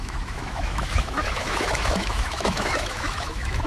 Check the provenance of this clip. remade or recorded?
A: remade